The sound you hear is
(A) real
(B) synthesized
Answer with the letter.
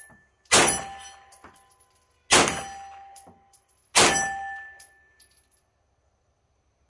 A